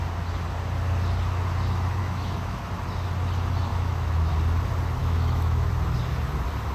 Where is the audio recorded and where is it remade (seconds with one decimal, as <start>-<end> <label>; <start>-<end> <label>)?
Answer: 0.0-2.0 recorded; 2.0-2.6 remade; 2.6-3.7 recorded; 3.7-4.3 remade; 4.3-5.0 recorded; 5.0-5.7 remade; 5.7-6.7 recorded